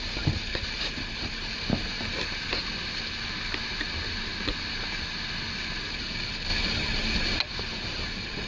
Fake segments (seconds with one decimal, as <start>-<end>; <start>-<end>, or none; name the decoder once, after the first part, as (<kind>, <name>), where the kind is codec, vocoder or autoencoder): 6.5-7.4 (vocoder, BigVGAN v2)